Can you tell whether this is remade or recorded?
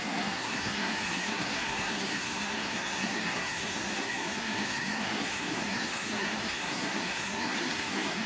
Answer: remade